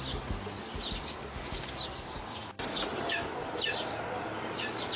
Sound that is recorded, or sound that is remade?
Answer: recorded